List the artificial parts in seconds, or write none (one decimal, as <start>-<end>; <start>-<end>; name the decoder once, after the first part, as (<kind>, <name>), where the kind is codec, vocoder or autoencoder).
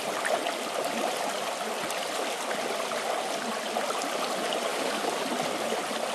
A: 4.7-5.2 (codec, DAC)